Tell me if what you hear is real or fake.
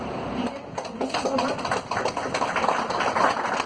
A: real